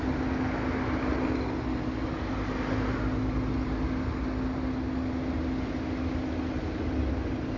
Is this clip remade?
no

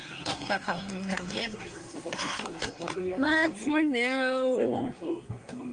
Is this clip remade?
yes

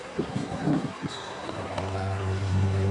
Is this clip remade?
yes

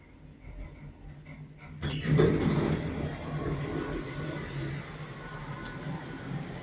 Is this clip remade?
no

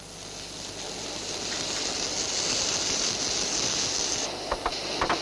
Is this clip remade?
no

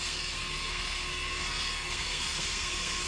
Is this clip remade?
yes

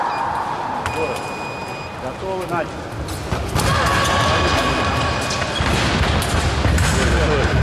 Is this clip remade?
no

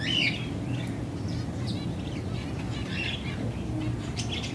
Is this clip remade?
no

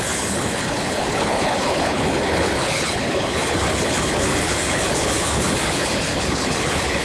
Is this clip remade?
yes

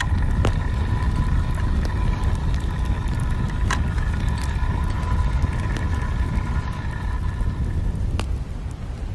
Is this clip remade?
no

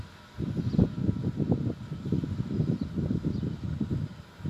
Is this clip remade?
no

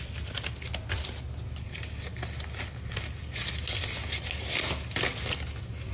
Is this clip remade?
no